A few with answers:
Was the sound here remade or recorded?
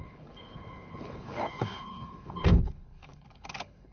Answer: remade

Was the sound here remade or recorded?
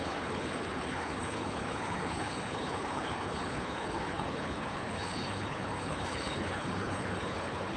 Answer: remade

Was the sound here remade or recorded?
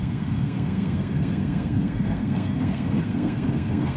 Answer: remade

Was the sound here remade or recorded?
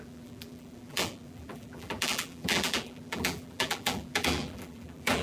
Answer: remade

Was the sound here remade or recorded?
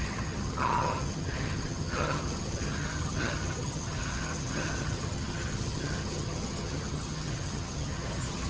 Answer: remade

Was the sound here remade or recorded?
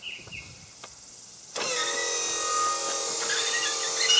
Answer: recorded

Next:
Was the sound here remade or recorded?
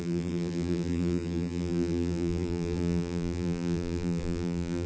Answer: remade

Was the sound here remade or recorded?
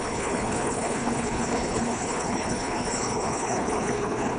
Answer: remade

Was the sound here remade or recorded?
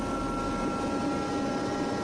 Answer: recorded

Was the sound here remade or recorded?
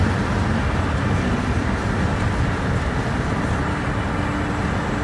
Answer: recorded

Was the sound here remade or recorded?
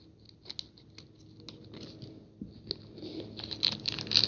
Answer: recorded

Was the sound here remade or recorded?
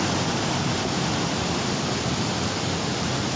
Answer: recorded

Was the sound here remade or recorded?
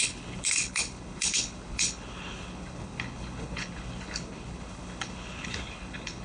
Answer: remade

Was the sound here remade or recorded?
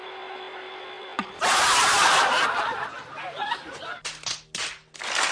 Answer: recorded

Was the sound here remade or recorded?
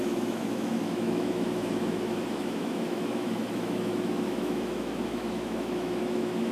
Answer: remade